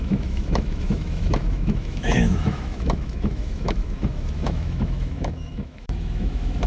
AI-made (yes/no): yes